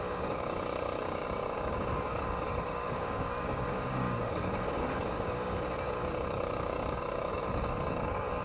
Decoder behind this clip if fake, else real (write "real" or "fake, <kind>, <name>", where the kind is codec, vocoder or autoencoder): fake, codec, DAC